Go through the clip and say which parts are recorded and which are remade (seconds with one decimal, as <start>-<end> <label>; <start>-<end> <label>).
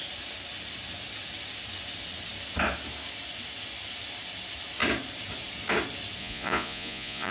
0.0-6.2 recorded; 6.2-7.3 remade